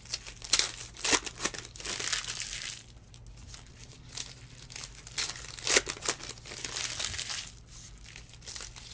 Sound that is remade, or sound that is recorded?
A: recorded